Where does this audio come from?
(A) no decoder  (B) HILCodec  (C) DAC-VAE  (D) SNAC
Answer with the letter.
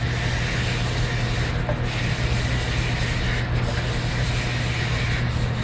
A